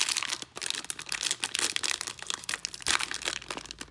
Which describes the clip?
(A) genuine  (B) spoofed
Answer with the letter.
A